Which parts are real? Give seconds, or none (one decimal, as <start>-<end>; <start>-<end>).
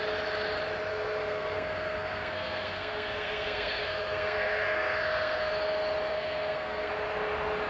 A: 0.0-0.9; 5.5-6.1; 6.9-7.7